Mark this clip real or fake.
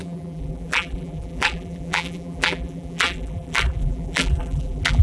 fake